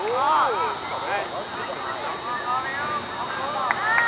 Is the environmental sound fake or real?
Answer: real